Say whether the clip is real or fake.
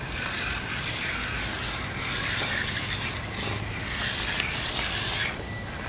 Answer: real